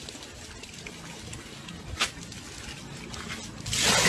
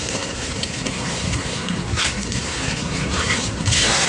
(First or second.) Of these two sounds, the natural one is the first